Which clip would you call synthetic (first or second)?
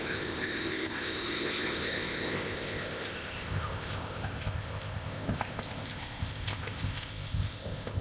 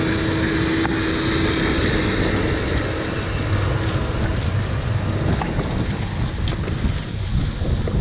first